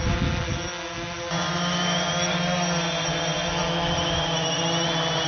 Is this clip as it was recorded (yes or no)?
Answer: yes